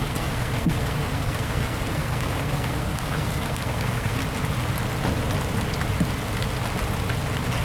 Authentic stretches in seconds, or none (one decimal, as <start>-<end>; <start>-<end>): 4.2-7.6